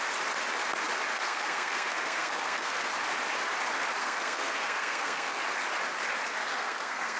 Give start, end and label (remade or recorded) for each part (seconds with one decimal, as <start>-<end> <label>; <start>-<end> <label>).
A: 0.0-1.1 recorded; 1.1-2.8 remade; 2.8-4.0 recorded; 4.0-5.4 remade; 5.4-6.5 recorded; 6.5-7.2 remade